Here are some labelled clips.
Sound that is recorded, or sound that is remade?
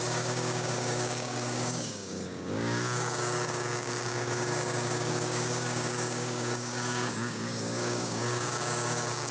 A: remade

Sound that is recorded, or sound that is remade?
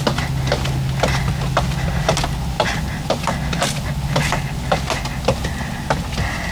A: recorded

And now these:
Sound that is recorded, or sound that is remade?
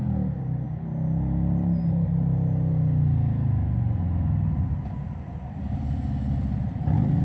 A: recorded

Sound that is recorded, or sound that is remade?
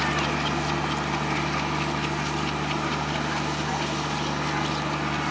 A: recorded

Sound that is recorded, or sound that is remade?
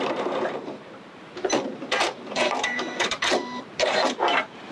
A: remade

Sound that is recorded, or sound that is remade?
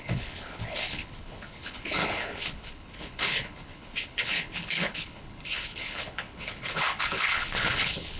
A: remade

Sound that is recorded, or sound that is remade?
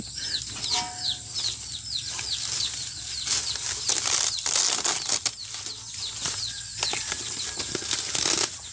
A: recorded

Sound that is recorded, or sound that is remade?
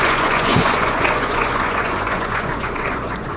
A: remade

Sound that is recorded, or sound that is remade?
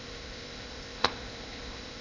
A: remade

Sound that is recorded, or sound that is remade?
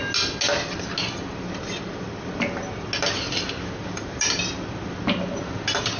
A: recorded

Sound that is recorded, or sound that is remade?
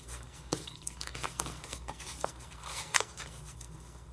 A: remade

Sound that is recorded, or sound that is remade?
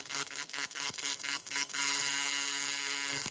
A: remade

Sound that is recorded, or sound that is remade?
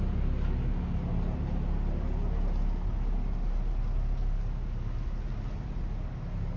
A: recorded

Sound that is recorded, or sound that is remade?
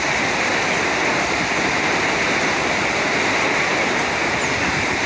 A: recorded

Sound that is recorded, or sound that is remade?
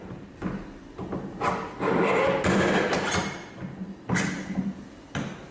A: recorded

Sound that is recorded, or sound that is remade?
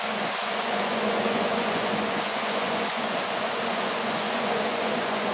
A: remade